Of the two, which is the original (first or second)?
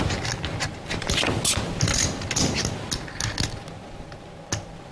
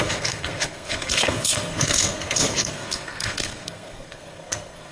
first